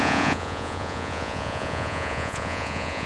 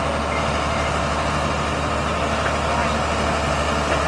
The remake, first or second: first